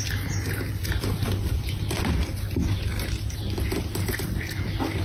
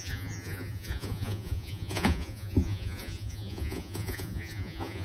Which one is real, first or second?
first